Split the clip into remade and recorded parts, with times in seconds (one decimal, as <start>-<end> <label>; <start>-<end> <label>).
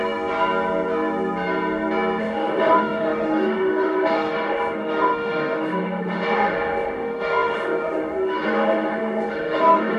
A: 0.0-2.2 recorded; 2.2-10.0 remade